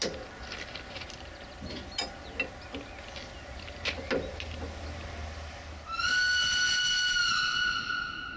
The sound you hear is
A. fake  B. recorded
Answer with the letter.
B